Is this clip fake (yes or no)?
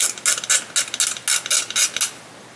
no